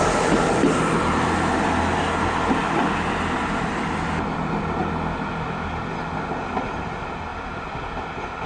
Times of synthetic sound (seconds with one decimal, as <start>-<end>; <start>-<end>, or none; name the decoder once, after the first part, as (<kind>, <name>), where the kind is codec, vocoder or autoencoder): 7.3-8.5 (vocoder, BigVGAN v2)